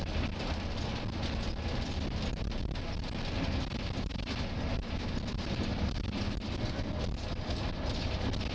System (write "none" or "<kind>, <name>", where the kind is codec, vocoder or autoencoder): none